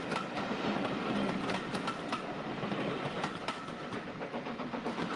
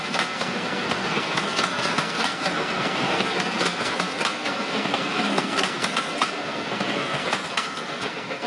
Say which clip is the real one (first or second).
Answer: first